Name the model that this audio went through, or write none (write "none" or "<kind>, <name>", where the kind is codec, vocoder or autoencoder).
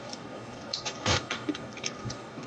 codec, DAC